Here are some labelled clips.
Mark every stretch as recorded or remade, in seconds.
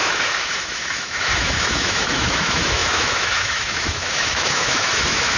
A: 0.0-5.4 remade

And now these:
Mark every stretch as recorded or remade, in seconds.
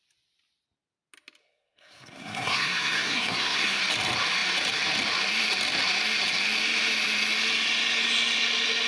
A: 0.0-1.4 recorded; 1.4-3.8 remade; 3.8-8.9 recorded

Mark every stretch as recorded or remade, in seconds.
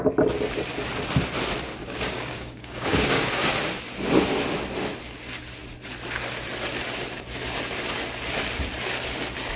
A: 0.0-1.8 recorded; 1.8-3.5 remade; 3.5-9.6 recorded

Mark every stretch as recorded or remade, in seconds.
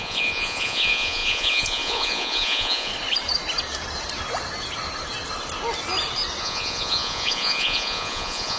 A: 0.0-2.9 remade; 2.9-6.4 recorded; 6.4-8.6 remade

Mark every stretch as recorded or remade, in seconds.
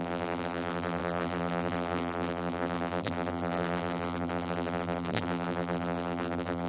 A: 0.0-6.7 remade